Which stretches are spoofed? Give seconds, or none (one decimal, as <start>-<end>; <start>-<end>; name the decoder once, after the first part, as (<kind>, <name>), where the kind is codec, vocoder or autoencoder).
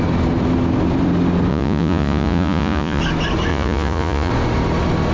1.5-3.0 (vocoder, Vocos); 3.5-4.3